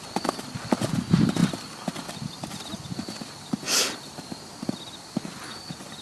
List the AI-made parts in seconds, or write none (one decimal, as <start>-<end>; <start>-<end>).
none